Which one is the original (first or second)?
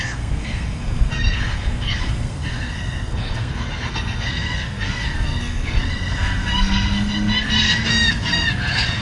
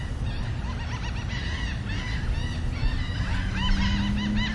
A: second